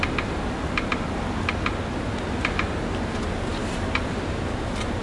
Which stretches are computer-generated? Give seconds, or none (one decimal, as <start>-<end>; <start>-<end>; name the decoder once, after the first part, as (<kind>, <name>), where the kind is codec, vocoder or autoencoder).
none